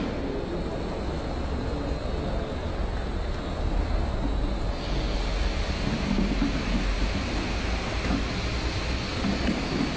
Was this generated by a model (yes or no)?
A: no